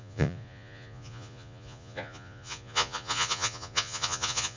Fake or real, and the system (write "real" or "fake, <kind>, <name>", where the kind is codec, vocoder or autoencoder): fake, vocoder, Vocos